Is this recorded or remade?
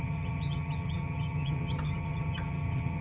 remade